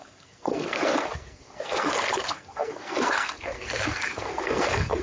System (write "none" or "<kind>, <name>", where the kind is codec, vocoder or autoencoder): codec, SNAC